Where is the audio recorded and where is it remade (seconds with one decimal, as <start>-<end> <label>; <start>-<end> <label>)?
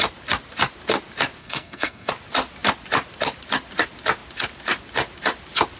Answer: 0.0-1.4 recorded; 1.4-2.1 remade; 2.1-5.8 recorded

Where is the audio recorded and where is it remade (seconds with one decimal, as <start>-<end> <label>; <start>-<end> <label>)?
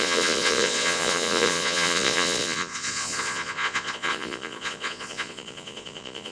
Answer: 0.0-6.3 remade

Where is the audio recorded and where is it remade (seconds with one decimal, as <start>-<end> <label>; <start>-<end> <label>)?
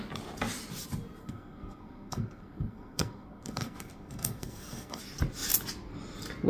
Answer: 0.0-1.2 recorded; 1.2-5.0 remade; 5.0-6.5 recorded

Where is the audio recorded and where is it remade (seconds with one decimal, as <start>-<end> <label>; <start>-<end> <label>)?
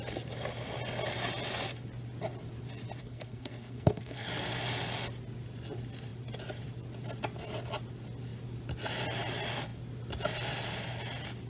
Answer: 0.0-3.0 recorded; 3.0-4.3 remade; 4.3-11.5 recorded